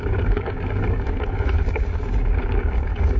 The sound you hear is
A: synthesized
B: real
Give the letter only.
A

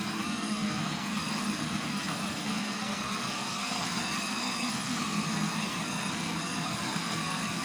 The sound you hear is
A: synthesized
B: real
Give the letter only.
A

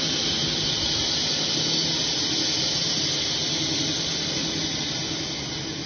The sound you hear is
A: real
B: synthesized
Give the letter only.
A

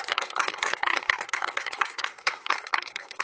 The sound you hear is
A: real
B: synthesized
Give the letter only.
B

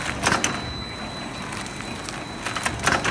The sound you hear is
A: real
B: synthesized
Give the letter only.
A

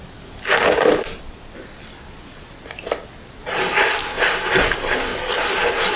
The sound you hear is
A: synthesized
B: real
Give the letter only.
B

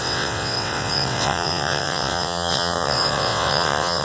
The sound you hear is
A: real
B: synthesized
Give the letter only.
B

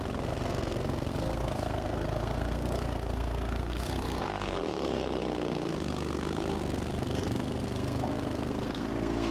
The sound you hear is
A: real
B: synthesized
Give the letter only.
B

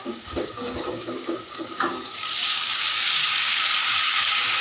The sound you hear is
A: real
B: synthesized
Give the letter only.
B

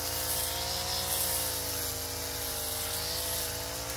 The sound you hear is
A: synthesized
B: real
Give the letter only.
B